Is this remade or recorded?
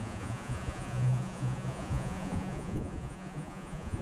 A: remade